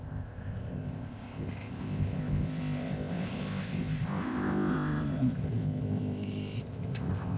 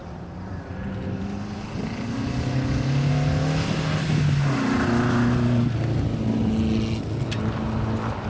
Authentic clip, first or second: second